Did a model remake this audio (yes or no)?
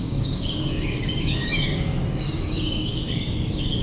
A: yes